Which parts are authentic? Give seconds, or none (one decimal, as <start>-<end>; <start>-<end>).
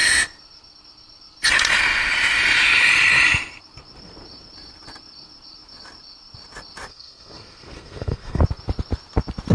0.0-6.9; 8.4-9.5